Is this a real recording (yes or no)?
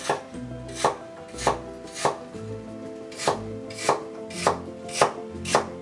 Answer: yes